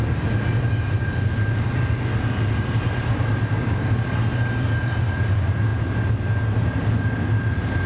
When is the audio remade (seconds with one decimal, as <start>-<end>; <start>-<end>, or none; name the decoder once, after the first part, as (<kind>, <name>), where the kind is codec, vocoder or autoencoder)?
none